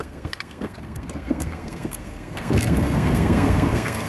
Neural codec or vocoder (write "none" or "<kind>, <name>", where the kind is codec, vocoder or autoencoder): codec, SNAC